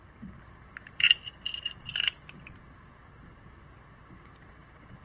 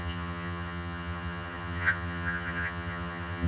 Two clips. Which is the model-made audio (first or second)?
second